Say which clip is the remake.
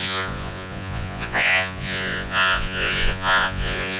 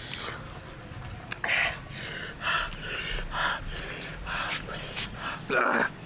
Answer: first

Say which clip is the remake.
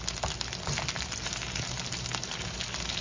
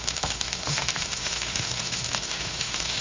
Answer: second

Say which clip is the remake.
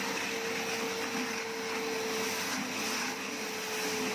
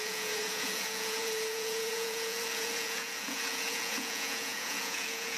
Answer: second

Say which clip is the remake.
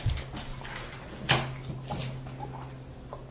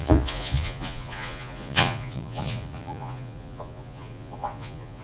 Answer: second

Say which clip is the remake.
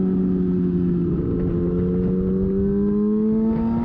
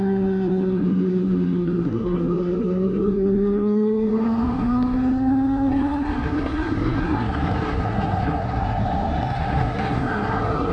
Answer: second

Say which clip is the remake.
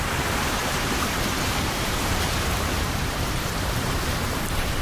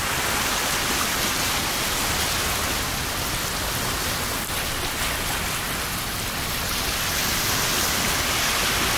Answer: first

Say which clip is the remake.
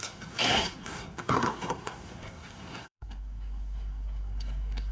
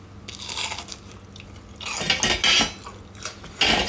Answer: first